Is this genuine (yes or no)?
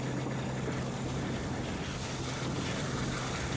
yes